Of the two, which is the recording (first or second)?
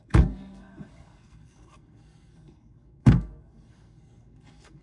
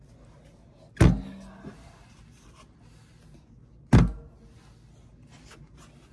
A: second